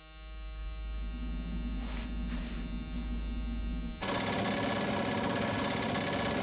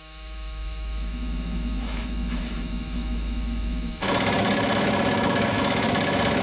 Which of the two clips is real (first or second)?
first